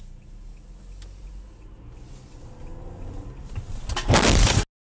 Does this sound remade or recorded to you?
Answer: recorded